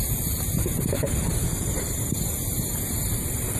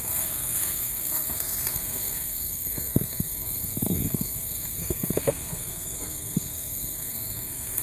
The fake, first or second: second